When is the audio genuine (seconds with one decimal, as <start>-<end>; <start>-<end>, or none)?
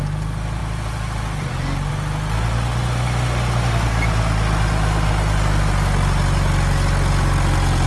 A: 0.0-0.6; 1.9-7.9